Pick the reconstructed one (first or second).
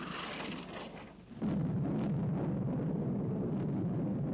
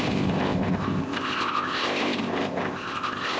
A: second